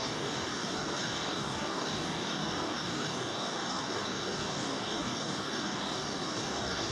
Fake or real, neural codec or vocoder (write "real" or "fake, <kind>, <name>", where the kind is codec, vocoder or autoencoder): fake, codec, DAC